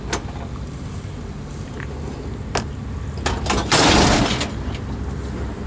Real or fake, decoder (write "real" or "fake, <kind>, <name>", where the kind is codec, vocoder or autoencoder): real